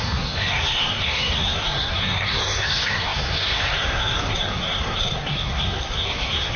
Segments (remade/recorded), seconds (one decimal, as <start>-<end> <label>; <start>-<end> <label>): 0.0-6.6 remade

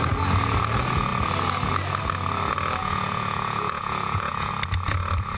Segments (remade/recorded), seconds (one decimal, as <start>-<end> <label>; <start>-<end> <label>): 0.0-2.8 recorded; 2.8-4.5 remade; 4.5-5.4 recorded

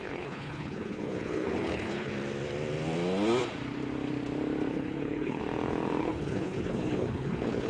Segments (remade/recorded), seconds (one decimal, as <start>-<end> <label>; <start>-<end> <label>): 0.0-2.1 remade; 2.1-4.7 recorded; 4.7-5.4 remade; 5.4-6.0 recorded; 6.0-7.7 remade